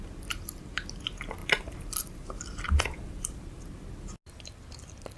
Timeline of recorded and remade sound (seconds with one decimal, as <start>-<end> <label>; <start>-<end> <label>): 0.0-1.4 recorded; 1.4-3.6 remade; 3.6-5.2 recorded